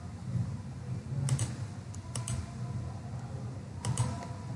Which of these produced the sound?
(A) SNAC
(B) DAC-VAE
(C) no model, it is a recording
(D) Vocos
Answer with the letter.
C